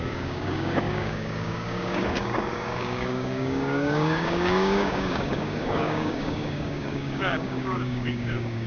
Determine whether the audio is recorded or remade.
remade